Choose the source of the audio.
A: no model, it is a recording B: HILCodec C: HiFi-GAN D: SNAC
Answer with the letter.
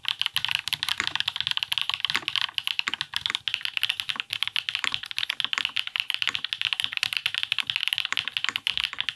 A